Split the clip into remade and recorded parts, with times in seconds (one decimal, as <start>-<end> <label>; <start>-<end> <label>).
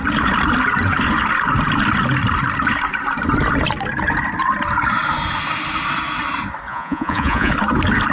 0.0-6.7 recorded; 6.7-7.5 remade; 7.5-8.1 recorded